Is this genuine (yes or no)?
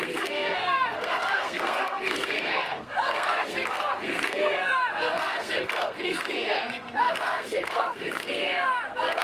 no